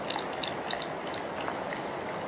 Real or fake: real